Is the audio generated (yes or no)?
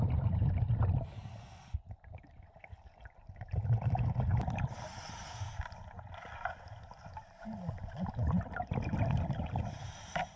no